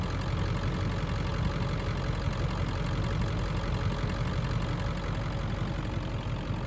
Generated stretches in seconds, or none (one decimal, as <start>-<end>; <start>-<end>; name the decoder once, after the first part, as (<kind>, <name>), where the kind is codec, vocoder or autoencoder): none